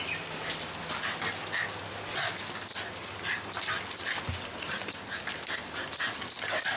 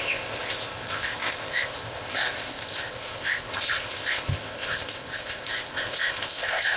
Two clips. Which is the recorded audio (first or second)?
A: first